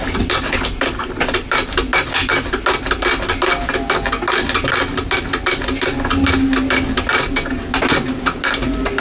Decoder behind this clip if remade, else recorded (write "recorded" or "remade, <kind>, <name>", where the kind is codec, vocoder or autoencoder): recorded